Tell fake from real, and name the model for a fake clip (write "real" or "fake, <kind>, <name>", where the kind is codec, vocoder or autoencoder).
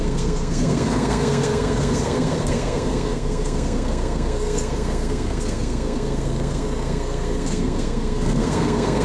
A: fake, codec, SNAC